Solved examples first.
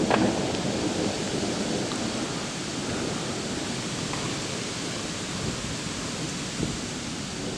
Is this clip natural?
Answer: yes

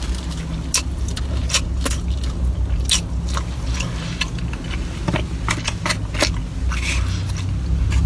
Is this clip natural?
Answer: yes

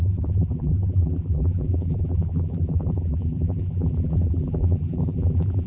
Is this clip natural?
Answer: no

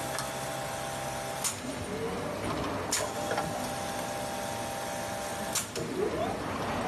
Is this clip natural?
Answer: yes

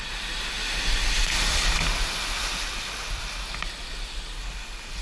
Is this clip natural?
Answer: yes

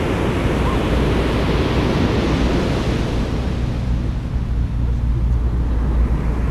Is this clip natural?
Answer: yes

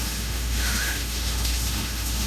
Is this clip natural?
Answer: no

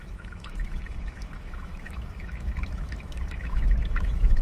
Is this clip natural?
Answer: no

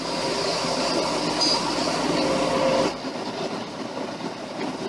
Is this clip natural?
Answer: yes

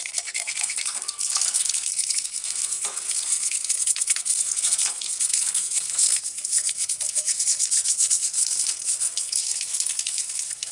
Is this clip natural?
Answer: no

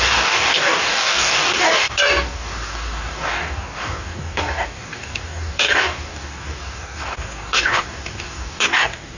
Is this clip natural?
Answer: no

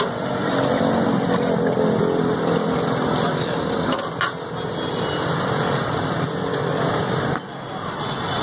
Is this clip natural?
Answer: yes